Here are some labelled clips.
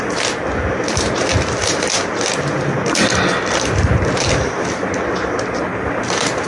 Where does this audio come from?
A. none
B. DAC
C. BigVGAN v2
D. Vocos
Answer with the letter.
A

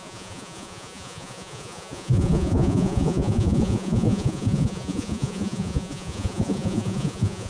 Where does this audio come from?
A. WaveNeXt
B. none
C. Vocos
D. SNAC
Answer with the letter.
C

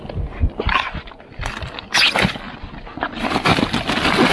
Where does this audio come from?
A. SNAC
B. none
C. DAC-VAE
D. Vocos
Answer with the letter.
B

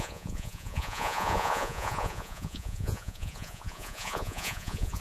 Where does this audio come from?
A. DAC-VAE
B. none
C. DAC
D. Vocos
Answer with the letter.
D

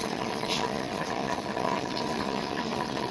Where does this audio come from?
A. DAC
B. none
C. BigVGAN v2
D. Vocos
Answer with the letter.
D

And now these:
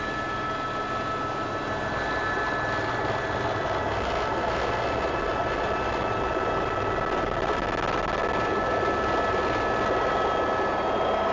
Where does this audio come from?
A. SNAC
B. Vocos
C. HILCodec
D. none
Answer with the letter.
D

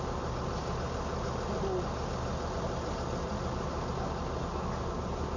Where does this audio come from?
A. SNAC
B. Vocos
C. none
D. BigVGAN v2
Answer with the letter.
C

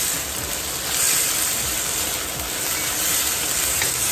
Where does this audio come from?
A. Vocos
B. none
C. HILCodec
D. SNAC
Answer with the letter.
B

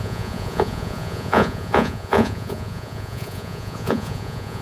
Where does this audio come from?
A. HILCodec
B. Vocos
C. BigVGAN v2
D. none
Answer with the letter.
B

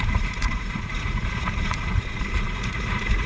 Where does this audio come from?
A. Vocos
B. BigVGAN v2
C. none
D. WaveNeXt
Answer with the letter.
A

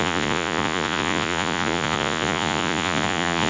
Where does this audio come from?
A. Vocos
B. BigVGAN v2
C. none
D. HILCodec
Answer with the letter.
A